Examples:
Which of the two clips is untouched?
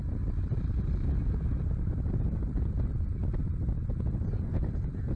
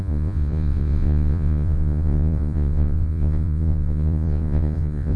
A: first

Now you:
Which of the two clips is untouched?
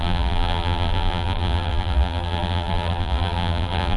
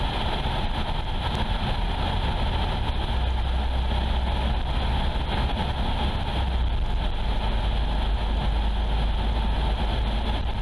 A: second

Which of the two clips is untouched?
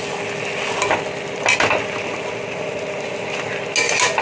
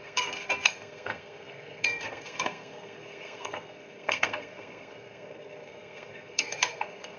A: first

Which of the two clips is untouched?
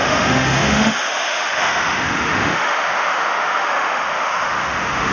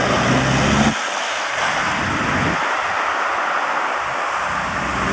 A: second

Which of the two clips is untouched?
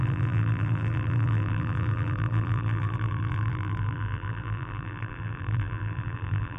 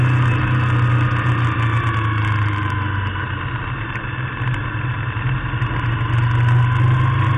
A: second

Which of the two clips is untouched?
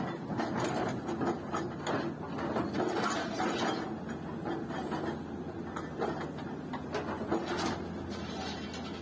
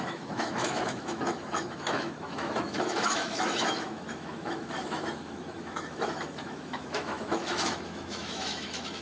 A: first